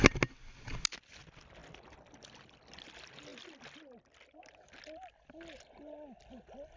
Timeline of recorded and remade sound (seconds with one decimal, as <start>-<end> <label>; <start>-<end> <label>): 0.0-6.8 recorded